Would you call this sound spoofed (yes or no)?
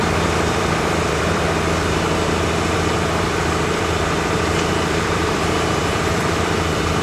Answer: yes